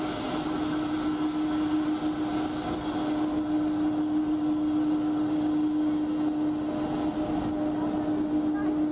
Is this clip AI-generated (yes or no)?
no